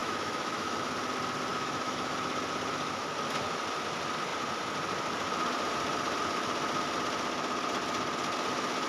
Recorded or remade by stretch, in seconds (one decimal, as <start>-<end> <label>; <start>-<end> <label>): 0.0-0.9 remade; 0.9-1.5 recorded; 1.5-2.2 remade; 2.2-8.9 recorded